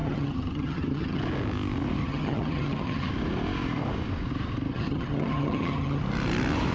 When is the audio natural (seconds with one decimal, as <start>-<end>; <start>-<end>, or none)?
1.2-2.0; 3.1-4.7; 6.0-6.7